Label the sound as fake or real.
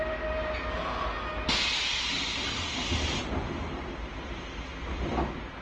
real